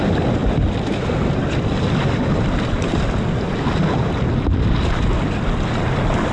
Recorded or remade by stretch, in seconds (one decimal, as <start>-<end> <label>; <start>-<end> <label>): 0.0-6.3 recorded